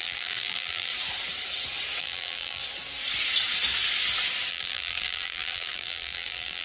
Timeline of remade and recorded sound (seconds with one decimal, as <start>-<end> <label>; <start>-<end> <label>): 0.0-0.9 remade; 0.9-2.0 recorded; 2.0-2.6 remade; 2.6-4.5 recorded; 4.5-6.6 remade